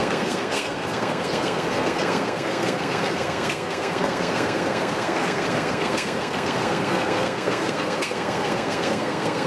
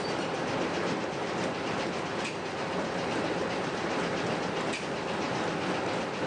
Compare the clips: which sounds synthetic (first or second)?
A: first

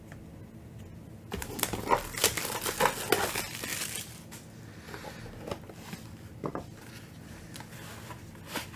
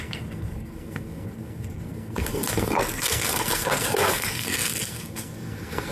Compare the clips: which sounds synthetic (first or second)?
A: second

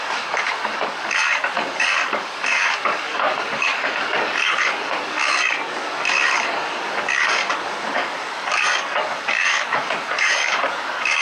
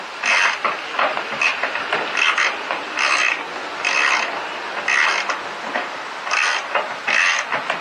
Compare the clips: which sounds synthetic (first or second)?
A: first